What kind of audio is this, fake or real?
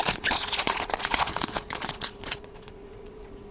fake